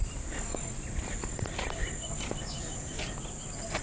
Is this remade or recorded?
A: recorded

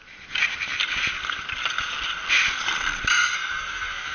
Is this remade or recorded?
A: recorded